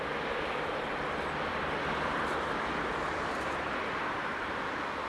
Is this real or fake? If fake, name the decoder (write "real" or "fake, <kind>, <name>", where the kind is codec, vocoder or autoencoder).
fake, vocoder, BigVGAN v2